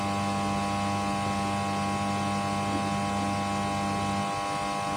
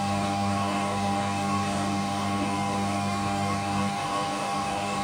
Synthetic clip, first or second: second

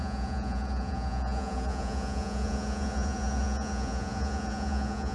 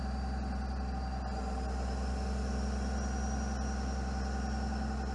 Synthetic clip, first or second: first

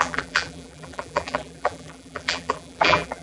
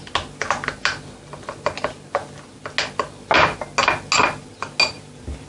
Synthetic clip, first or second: first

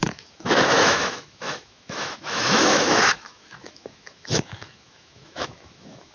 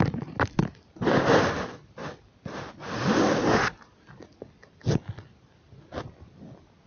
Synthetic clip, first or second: first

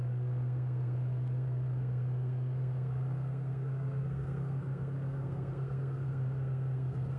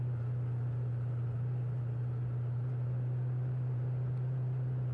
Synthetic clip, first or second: first